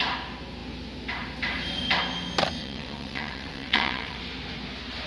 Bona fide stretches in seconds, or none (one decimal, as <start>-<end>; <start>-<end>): 0.0-2.6; 4.2-5.1